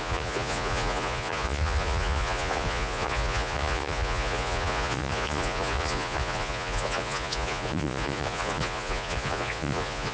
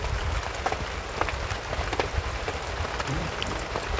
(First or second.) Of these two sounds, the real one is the second